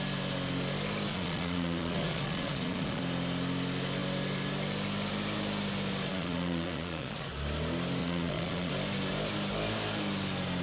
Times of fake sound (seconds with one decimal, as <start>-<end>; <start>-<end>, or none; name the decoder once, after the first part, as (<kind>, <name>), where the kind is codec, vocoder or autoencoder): 1.1-3.0 (vocoder, Vocos); 6.1-7.3; 8.0-8.7